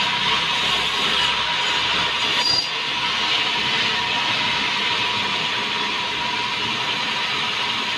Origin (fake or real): real